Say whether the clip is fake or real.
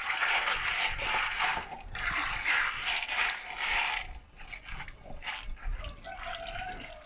real